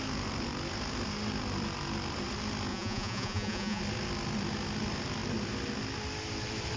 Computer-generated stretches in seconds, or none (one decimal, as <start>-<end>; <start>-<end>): 2.7-3.8